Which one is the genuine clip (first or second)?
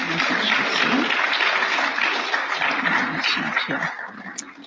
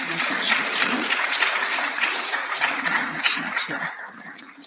first